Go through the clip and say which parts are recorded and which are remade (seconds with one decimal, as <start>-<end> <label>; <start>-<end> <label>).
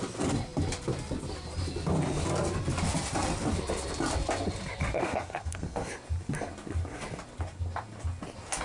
0.0-5.0 recorded; 5.0-5.9 remade; 5.9-8.6 recorded